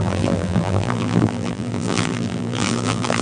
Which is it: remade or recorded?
remade